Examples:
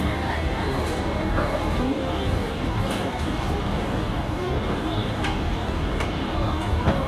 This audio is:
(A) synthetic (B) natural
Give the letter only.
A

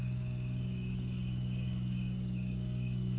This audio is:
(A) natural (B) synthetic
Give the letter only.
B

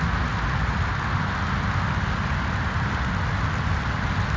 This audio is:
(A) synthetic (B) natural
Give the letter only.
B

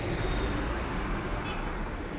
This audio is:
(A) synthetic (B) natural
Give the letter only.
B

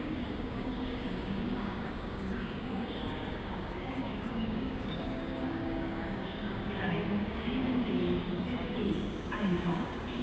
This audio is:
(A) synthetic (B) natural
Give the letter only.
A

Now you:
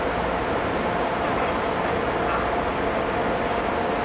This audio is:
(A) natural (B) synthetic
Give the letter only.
A